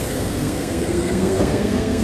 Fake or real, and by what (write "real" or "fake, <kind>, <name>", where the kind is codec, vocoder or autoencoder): fake, codec, SNAC